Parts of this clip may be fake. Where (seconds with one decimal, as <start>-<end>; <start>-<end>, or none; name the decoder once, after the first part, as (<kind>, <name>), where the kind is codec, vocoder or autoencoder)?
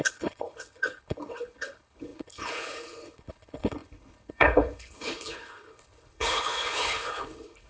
0.0-7.7 (codec, HILCodec)